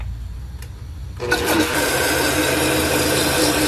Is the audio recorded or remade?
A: recorded